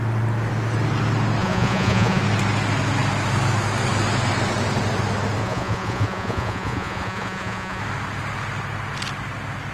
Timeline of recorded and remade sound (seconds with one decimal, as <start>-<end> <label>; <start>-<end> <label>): 0.0-1.4 recorded; 1.4-2.2 remade; 2.2-5.4 recorded; 5.4-7.8 remade; 7.8-9.7 recorded

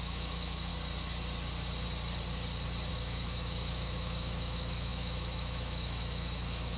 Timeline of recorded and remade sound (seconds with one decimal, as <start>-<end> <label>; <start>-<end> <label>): 0.0-0.7 remade; 0.7-2.9 recorded; 2.9-6.8 remade

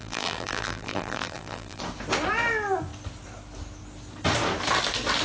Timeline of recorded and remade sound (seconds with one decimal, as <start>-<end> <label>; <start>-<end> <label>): 0.0-1.8 remade; 1.8-5.2 recorded

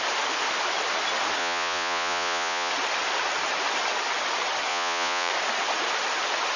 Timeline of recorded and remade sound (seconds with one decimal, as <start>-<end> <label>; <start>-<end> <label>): 0.0-1.4 recorded; 1.4-2.7 remade; 2.7-4.7 recorded; 4.7-5.3 remade; 5.3-6.6 recorded

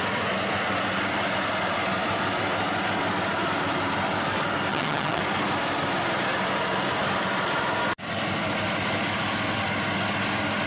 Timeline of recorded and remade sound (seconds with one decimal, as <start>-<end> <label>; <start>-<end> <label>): 0.0-4.7 recorded; 4.7-5.2 remade; 5.2-10.7 recorded

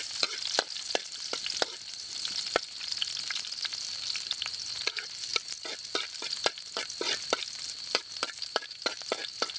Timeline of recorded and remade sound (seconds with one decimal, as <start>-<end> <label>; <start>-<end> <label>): 0.0-9.6 recorded

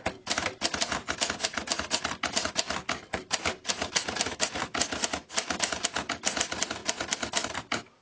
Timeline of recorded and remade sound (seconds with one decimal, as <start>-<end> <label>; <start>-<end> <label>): 0.0-8.0 recorded